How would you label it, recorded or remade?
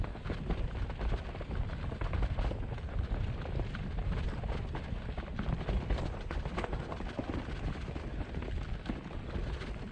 recorded